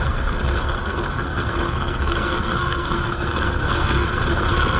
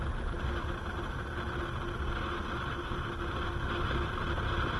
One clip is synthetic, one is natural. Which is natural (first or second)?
second